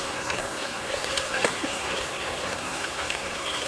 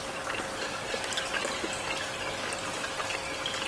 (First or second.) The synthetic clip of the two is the first